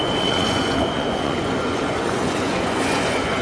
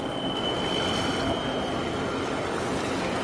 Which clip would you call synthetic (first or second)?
first